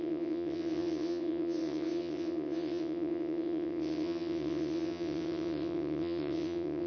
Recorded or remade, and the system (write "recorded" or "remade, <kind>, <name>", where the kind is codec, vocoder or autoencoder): remade, vocoder, WaveNeXt